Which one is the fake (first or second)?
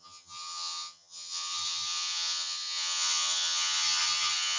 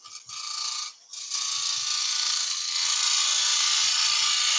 first